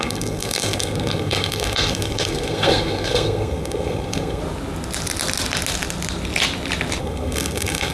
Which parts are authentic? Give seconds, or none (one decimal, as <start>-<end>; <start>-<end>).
4.4-7.0